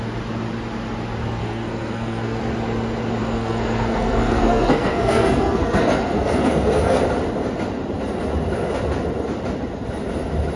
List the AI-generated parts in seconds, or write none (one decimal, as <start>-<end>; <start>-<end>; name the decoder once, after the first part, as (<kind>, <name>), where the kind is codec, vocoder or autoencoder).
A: 1.4-2.4 (codec, SNAC); 3.2-7.0